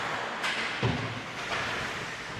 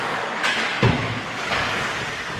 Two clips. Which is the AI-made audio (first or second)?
second